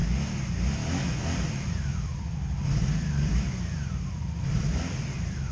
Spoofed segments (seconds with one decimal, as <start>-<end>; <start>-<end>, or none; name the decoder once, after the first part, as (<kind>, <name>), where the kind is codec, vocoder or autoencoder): 1.2-5.5 (vocoder, BigVGAN v2)